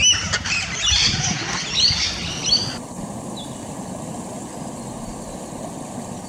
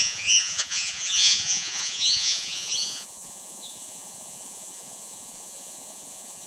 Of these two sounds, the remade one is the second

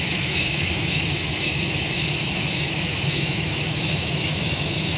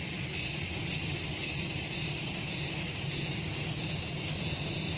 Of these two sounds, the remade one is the first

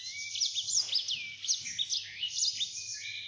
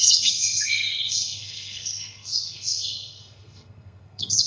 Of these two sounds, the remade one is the second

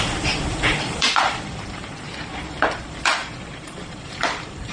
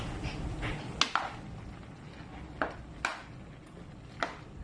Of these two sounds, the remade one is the first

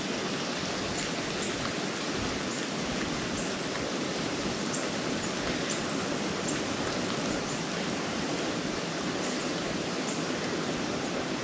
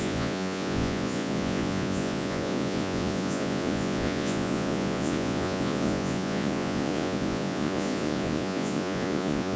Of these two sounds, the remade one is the second